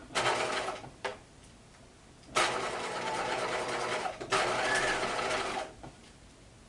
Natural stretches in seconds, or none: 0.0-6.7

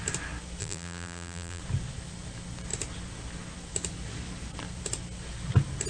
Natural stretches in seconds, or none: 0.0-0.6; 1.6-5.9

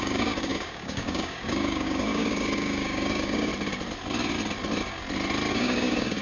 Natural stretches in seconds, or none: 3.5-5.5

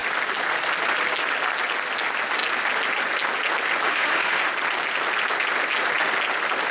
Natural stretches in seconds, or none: 0.0-3.8; 4.4-6.7

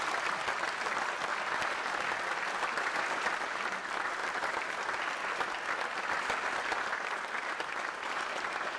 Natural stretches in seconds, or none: 0.0-1.3; 3.3-8.8

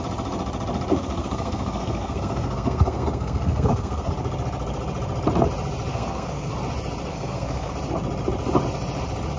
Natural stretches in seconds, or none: 0.0-0.9; 4.1-5.9; 6.5-7.1; 7.7-9.4

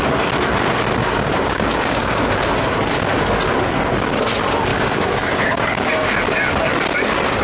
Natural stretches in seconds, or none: 0.0-1.0; 2.3-4.7; 6.1-7.4

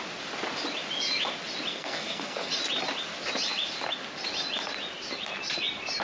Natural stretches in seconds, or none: 0.0-1.7; 2.5-6.0